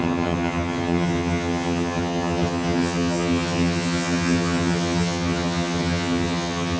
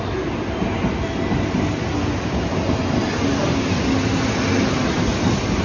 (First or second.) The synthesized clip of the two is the first